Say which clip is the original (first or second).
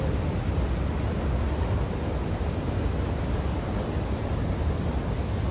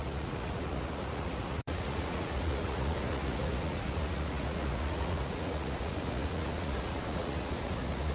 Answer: first